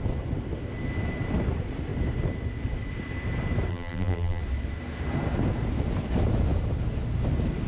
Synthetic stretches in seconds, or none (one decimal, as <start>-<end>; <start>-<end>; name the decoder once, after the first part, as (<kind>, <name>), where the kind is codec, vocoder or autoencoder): 3.7-4.4 (vocoder, BigVGAN v2)